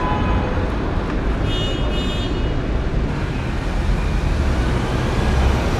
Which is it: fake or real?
real